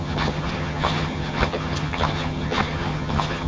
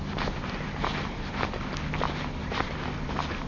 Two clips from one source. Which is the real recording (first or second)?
second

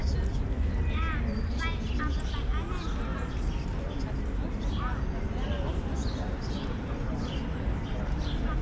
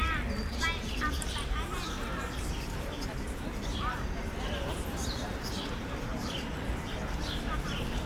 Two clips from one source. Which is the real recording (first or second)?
first